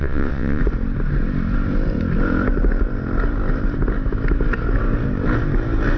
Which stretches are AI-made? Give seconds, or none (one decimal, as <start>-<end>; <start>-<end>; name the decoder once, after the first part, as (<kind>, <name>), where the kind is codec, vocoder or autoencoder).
0.0-0.6 (vocoder, WaveNeXt)